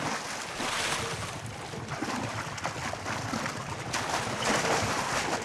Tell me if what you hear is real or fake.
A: real